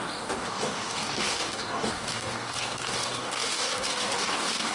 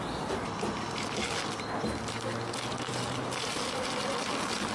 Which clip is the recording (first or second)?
second